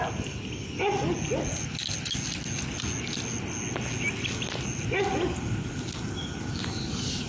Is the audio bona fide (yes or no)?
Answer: yes